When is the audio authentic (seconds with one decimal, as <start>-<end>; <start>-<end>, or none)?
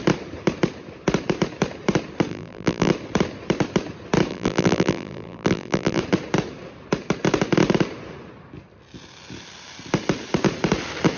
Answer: 0.0-2.3; 2.9-4.3; 6.0-11.2